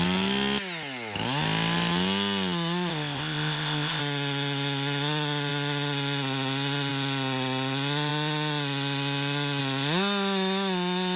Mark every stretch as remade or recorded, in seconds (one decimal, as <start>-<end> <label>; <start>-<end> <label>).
0.0-2.9 recorded; 2.9-4.0 remade; 4.0-11.2 recorded